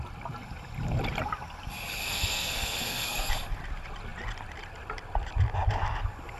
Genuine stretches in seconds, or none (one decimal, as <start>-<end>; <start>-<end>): 0.0-2.0; 3.3-6.4